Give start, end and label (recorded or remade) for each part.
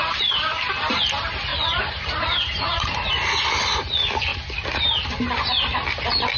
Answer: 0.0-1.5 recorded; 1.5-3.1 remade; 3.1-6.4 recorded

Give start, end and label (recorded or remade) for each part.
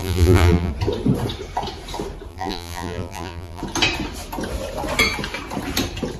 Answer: 0.0-0.7 remade; 0.7-2.3 recorded; 2.3-3.6 remade; 3.6-6.2 recorded